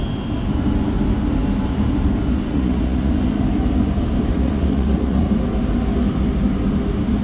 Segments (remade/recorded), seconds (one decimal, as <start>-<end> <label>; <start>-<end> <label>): 0.0-2.5 recorded; 2.5-3.1 remade; 3.1-4.3 recorded; 4.3-5.3 remade; 5.3-7.2 recorded

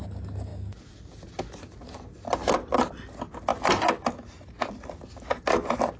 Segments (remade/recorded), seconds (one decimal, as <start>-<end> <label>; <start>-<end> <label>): 0.0-6.0 recorded

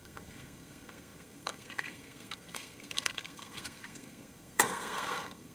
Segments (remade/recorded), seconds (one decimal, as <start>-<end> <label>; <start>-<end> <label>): 0.0-5.5 remade